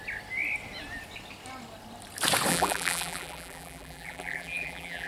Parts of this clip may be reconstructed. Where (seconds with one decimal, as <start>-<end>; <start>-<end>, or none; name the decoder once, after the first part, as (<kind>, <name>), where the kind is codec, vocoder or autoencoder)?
2.5-5.1 (vocoder, BigVGAN v2)